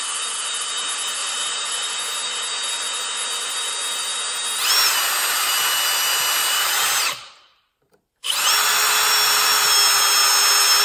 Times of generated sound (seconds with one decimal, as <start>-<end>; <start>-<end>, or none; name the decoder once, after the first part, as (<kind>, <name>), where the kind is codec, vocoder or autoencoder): 1.2-2.0 (vocoder, BigVGAN v2); 6.4-8.5